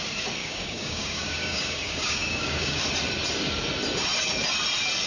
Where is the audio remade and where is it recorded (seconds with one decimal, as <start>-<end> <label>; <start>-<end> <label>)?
0.0-0.4 recorded; 0.4-2.8 remade; 2.8-5.1 recorded